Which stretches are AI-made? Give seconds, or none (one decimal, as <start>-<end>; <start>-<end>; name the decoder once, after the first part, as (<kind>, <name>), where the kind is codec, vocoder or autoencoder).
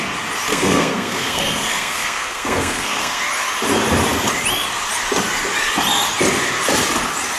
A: 0.5-3.2 (codec, SNAC)